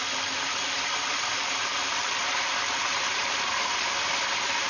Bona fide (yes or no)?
no